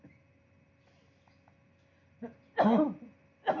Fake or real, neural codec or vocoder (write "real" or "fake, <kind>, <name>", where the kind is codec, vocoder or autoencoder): real